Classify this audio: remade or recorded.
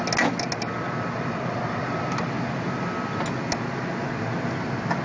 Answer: recorded